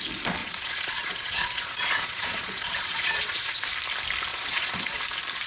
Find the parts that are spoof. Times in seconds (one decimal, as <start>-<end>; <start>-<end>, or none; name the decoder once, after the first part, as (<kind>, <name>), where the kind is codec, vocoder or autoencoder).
0.4-3.7 (vocoder, Vocos); 4.3-5.0